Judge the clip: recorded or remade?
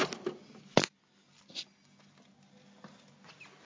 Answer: recorded